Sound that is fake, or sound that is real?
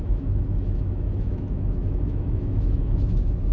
fake